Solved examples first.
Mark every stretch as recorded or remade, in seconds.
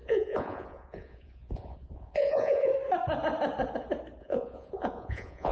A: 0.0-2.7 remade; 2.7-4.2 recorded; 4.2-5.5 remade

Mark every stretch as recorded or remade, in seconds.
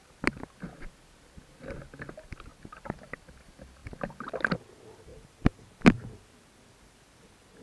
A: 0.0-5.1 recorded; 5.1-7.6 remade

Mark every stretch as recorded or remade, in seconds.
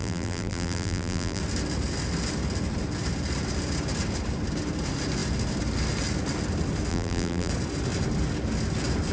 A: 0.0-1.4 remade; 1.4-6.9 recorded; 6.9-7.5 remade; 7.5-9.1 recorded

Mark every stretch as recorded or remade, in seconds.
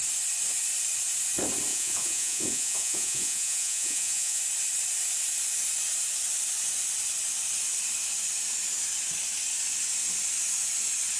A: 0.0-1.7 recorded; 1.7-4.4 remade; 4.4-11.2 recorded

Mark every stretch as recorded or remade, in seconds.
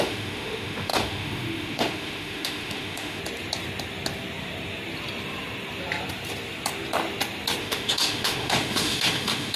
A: 0.0-3.2 remade; 3.2-7.6 recorded; 7.6-9.6 remade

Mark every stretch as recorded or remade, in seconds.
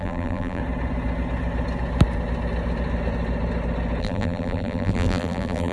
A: 0.0-0.6 remade; 0.6-4.0 recorded; 4.0-5.7 remade